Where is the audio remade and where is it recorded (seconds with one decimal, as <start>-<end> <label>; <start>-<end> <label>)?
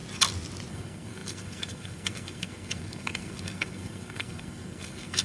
0.0-0.7 recorded; 0.7-5.2 remade